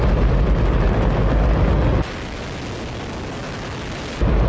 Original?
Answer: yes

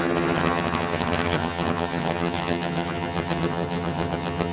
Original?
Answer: no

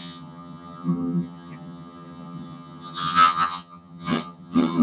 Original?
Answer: no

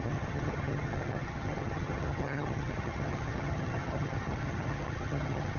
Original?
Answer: no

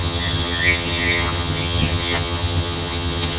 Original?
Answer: no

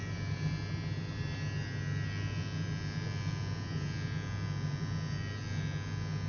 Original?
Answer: yes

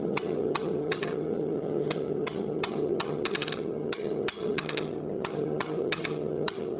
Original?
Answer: no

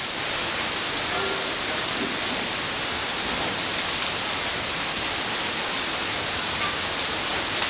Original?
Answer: yes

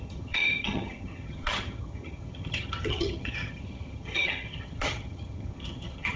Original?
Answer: no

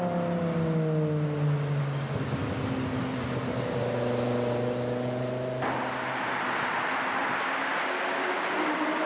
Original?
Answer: yes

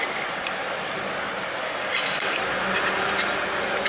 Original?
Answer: yes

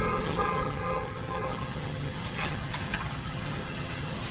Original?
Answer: no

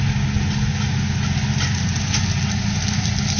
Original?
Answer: yes